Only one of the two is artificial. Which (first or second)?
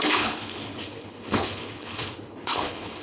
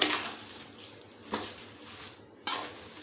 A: first